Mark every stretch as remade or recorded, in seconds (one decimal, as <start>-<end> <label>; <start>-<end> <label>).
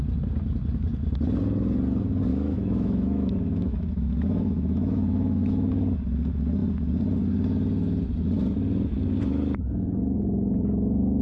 0.0-2.3 recorded; 2.3-5.7 remade; 5.7-11.2 recorded